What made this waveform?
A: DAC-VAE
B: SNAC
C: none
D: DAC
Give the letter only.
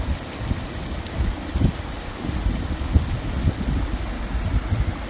C